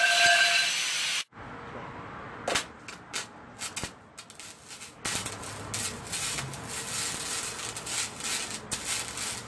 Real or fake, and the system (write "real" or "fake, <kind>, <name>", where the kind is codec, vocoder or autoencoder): real